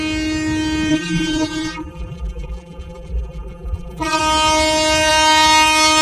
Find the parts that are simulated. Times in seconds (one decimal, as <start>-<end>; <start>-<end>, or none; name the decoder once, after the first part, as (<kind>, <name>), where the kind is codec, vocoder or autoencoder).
0.9-4.2 (vocoder, BigVGAN v2)